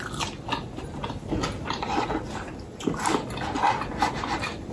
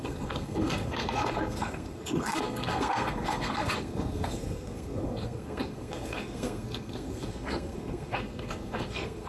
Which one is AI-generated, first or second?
second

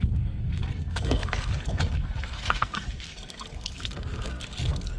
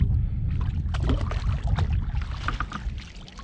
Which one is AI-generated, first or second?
first